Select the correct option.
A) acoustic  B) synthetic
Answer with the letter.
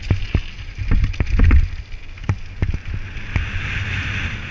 A